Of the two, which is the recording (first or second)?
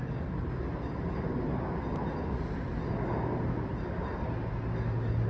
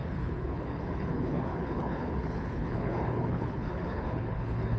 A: first